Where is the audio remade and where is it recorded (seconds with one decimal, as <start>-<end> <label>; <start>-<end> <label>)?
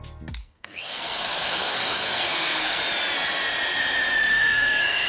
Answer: 0.0-0.4 recorded; 0.4-2.8 remade; 2.8-4.3 recorded; 4.3-5.1 remade